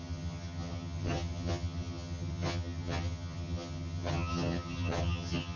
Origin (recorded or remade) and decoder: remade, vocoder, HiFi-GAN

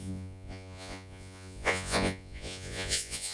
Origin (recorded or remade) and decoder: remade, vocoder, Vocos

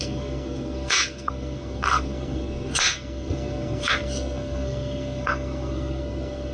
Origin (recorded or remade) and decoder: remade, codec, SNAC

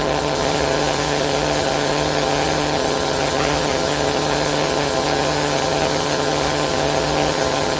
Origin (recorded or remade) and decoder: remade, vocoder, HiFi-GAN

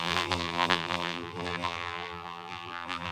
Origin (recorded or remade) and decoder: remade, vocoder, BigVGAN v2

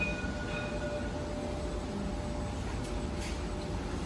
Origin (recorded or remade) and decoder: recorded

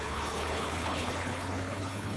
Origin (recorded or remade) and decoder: remade, codec, HILCodec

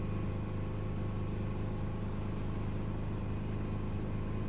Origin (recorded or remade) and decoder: recorded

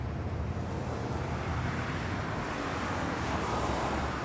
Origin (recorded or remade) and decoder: recorded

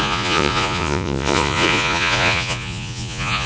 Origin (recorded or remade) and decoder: remade, vocoder, Vocos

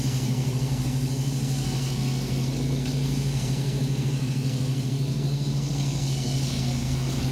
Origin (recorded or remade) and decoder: remade, codec, SNAC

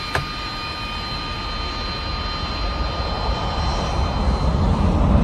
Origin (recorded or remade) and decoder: recorded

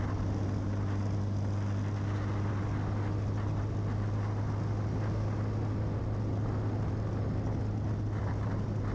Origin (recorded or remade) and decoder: recorded